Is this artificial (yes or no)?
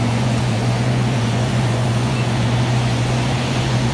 yes